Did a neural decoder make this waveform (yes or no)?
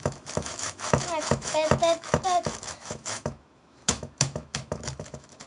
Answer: yes